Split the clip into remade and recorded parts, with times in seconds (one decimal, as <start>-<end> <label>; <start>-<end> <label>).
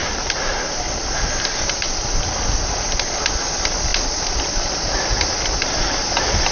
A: 0.0-3.2 remade; 3.2-6.5 recorded